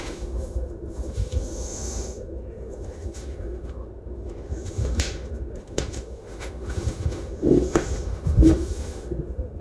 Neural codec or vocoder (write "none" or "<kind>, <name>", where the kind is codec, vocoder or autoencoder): autoencoder, DAC-VAE